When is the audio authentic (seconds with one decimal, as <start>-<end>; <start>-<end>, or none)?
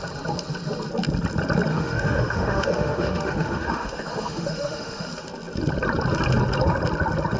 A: 0.0-1.7; 5.1-7.4